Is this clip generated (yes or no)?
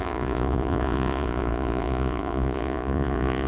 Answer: yes